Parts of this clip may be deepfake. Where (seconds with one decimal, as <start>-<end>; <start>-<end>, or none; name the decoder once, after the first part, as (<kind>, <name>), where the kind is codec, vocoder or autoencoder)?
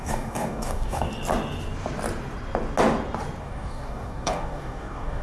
0.0-1.1 (codec, DAC); 3.4-5.2